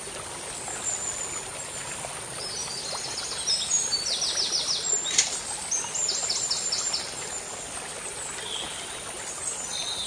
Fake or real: real